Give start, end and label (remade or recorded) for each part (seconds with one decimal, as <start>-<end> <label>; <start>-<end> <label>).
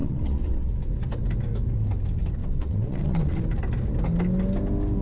0.0-0.7 remade; 0.7-2.4 recorded; 2.4-3.4 remade; 3.4-5.0 recorded